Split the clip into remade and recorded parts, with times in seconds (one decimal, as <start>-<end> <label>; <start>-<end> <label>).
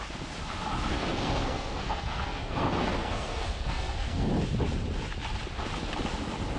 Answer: 0.0-0.9 recorded; 0.9-4.3 remade; 4.3-6.6 recorded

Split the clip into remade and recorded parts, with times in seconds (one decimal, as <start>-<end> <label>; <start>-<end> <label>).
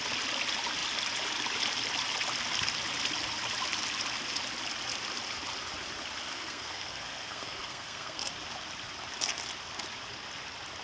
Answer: 0.0-6.3 recorded; 6.3-8.3 remade; 8.3-10.8 recorded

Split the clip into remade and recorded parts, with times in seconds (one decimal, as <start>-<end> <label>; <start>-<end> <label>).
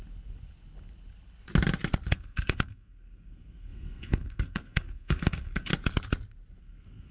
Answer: 0.0-2.1 recorded; 2.1-5.7 remade; 5.7-6.6 recorded; 6.6-7.1 remade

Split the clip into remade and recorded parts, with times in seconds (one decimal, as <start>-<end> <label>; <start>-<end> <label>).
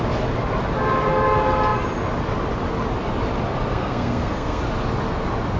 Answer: 0.0-3.7 recorded; 3.7-4.6 remade; 4.6-5.6 recorded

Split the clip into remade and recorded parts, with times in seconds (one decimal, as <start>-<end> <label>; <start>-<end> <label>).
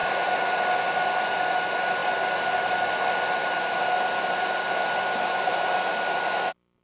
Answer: 0.0-6.8 recorded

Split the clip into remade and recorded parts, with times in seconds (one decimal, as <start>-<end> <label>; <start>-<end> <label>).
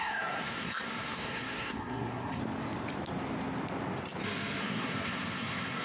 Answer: 0.0-2.4 remade; 2.4-4.6 recorded; 4.6-5.8 remade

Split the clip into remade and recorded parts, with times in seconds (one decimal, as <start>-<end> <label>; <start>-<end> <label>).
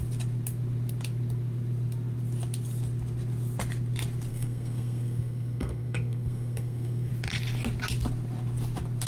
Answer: 0.0-4.3 recorded; 4.3-7.1 remade; 7.1-9.1 recorded